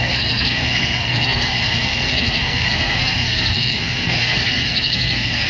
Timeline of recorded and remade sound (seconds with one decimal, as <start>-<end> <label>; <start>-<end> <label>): 0.0-5.5 remade